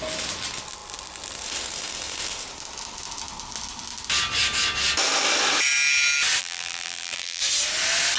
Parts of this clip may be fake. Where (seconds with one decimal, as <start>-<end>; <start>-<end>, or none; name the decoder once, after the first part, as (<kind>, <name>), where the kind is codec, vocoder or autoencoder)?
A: 6.4-7.4 (vocoder, BigVGAN v2)